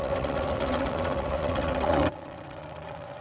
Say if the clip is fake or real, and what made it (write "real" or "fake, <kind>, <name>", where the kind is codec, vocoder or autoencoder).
fake, vocoder, WaveNeXt